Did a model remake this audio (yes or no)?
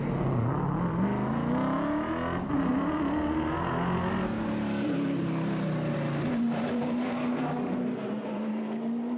no